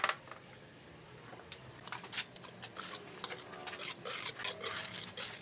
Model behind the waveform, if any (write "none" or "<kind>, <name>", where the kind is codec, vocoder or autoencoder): none